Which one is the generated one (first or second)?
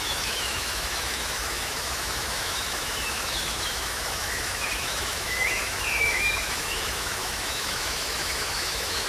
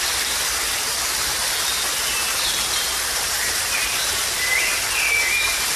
first